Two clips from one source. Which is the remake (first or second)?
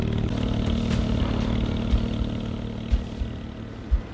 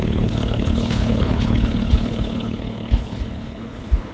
second